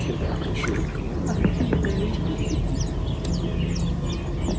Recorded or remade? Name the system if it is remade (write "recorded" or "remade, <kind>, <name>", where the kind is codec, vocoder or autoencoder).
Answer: recorded